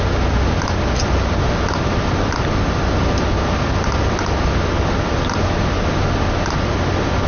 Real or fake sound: real